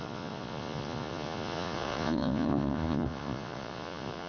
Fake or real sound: fake